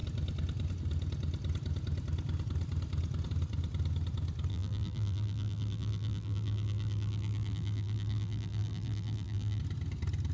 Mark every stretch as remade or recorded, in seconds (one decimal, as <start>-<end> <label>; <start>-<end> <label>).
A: 0.0-4.5 recorded; 4.5-9.6 remade; 9.6-10.3 recorded